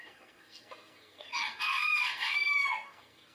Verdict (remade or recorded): remade